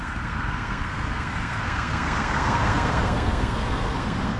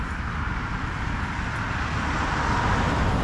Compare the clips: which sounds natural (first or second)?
second